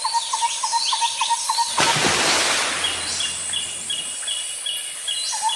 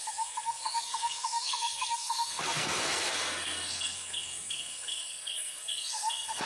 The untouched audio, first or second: first